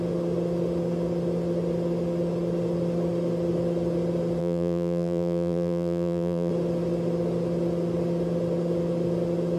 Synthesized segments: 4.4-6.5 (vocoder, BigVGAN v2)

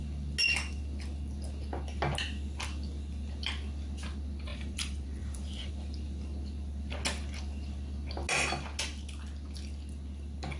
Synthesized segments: 4.5-5.7 (vocoder, BigVGAN v2)

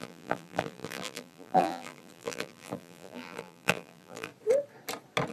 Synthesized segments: 0.0-4.3 (vocoder, BigVGAN v2)

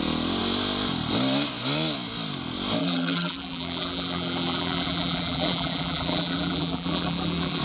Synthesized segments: 2.8-7.6 (vocoder, BigVGAN v2)

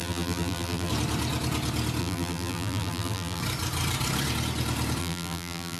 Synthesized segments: 0.0-0.9 (vocoder, BigVGAN v2); 2.0-3.4; 5.0-5.8